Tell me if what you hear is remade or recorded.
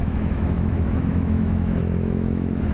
remade